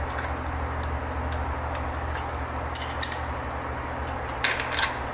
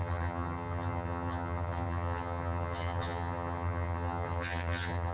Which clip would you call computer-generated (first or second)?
second